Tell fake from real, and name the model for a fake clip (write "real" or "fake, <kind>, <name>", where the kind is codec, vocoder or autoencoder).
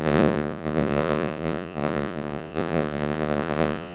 fake, vocoder, Vocos